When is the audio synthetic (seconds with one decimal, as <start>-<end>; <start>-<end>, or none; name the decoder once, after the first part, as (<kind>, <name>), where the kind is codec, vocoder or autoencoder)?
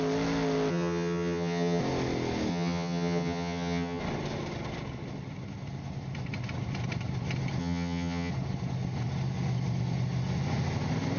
0.7-1.8 (vocoder, HiFi-GAN); 2.5-4.0; 7.6-8.3